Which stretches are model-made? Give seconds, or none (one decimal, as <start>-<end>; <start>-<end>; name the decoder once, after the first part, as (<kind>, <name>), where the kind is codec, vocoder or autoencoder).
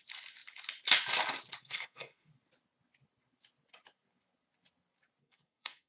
1.6-2.3 (codec, SNAC); 5.2-5.9